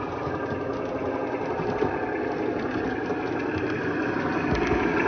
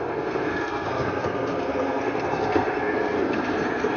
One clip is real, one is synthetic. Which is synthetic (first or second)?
second